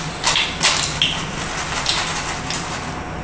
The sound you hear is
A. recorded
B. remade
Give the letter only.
A